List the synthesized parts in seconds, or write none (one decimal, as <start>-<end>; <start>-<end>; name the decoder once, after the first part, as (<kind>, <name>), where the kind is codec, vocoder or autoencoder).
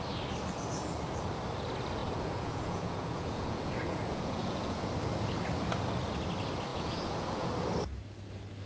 2.0-4.9 (vocoder, Vocos); 6.7-7.5